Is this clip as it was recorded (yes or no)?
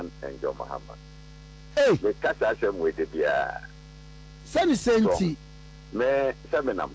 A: yes